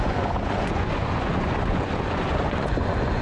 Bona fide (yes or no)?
no